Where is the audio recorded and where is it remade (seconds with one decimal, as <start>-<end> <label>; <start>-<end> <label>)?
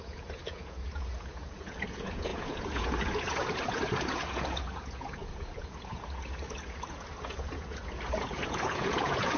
0.0-9.4 remade